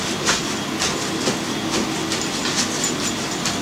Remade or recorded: recorded